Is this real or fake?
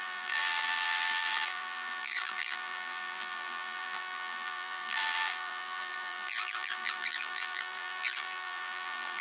fake